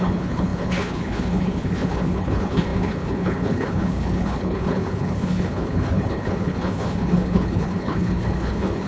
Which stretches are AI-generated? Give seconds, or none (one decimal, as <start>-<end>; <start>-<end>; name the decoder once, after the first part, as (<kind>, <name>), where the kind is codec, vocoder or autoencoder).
0.0-8.9 (codec, HILCodec)